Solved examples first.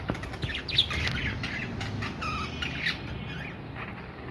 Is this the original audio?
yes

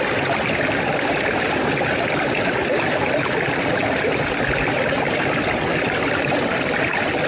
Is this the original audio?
yes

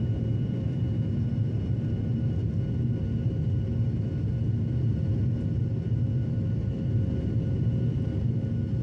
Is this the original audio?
yes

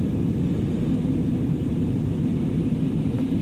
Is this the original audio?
no